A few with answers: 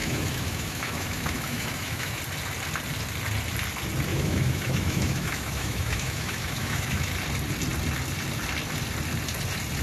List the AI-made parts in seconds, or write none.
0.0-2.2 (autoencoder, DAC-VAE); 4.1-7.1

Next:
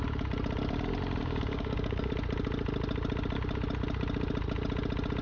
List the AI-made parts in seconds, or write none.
1.2-2.1 (codec, DAC)